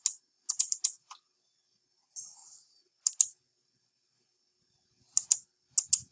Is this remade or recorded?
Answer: recorded